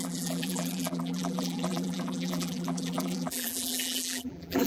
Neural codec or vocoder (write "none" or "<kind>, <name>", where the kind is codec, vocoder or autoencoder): vocoder, BigVGAN v2